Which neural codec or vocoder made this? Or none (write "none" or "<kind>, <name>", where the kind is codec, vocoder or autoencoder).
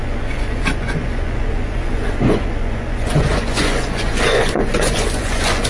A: vocoder, Vocos